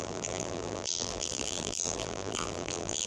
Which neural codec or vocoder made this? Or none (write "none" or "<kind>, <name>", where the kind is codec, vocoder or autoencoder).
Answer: vocoder, BigVGAN v2